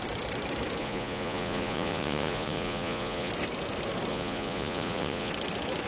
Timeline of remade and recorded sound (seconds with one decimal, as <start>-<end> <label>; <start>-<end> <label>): 0.0-0.8 recorded; 0.8-3.3 remade; 3.3-4.1 recorded; 4.1-5.3 remade; 5.3-5.9 recorded